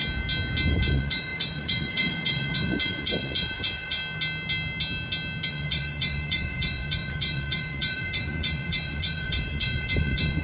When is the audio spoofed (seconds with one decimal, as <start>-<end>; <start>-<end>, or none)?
0.7-4.0; 5.5-10.4